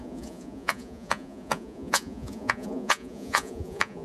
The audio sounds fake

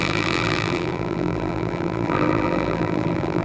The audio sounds fake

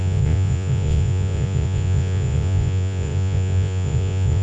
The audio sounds fake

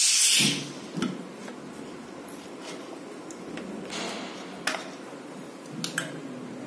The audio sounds real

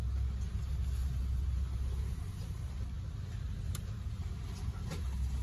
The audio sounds real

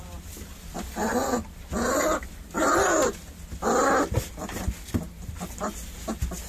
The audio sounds real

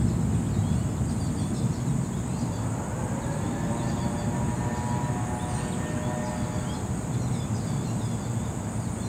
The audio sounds real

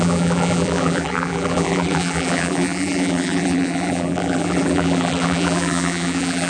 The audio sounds fake